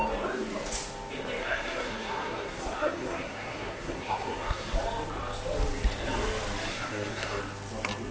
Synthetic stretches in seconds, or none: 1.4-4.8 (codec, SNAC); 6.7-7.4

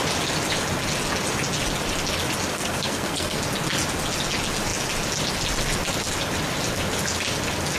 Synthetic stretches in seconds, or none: 2.5-3.4 (codec, SNAC)

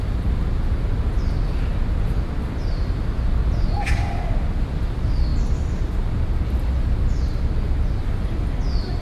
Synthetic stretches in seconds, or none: none

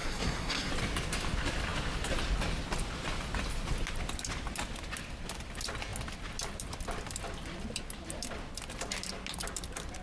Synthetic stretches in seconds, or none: 0.0-0.7 (codec, SNAC)

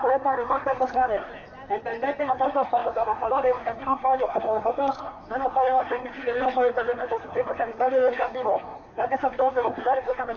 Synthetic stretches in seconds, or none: 0.0-1.3 (codec, SNAC); 2.2-10.4

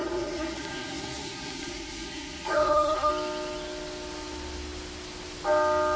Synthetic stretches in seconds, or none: 0.0-3.1 (codec, SNAC)

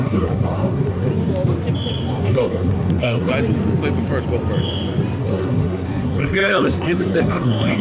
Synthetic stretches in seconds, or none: 0.0-1.1 (codec, SNAC); 2.1-3.3; 5.2-7.8